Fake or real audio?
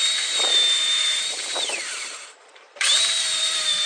fake